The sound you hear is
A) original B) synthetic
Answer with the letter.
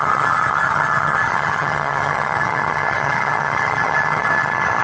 B